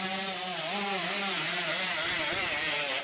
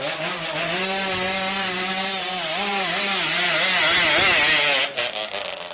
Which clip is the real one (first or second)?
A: second